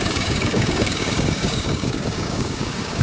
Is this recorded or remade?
remade